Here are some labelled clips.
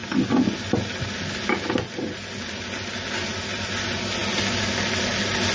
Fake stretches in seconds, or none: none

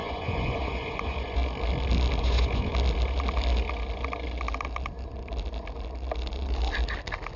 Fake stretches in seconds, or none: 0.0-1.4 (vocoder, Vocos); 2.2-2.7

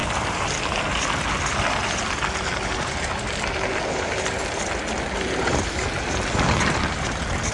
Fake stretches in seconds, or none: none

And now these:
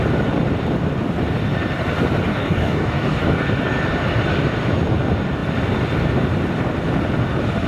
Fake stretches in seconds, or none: 2.3-3.2 (codec, DAC)

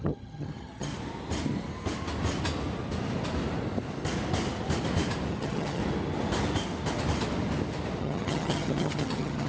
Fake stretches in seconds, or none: 0.0-0.9 (vocoder, HiFi-GAN); 5.3-5.8; 8.0-9.5